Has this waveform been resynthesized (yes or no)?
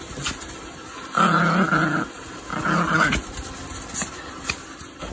no